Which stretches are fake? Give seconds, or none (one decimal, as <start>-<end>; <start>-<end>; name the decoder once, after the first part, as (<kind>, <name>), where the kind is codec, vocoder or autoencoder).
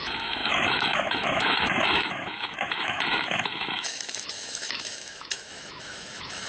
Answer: 0.0-6.5 (autoencoder, DAC-VAE)